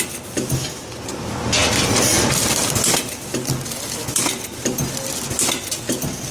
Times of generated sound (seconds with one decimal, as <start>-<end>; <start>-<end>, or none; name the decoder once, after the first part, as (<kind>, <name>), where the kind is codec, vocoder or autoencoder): none